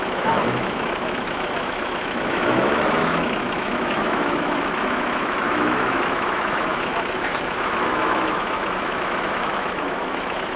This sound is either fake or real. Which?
fake